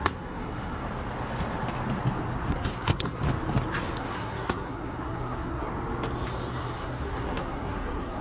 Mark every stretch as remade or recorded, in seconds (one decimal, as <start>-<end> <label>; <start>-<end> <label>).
0.0-0.8 remade; 0.8-2.5 recorded; 2.5-3.2 remade; 3.2-4.0 recorded; 4.0-5.7 remade; 5.7-6.5 recorded; 6.5-8.2 remade